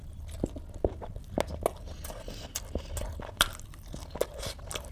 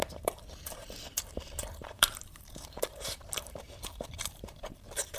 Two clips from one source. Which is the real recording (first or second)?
first